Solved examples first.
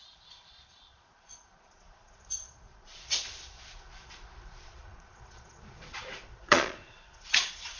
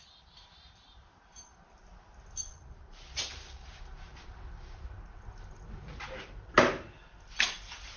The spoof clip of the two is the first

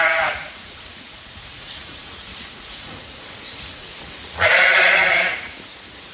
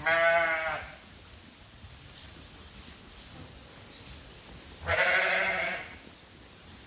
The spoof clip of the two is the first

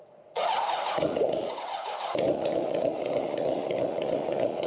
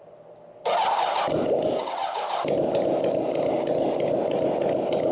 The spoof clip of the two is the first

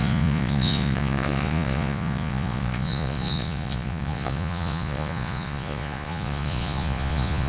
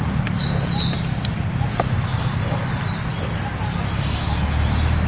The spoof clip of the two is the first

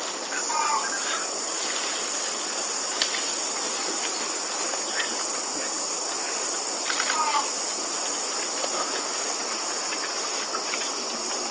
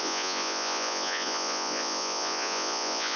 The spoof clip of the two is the second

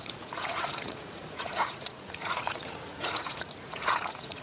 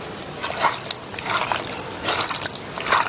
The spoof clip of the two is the first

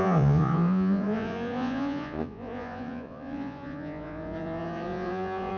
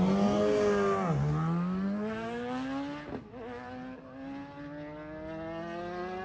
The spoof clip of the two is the first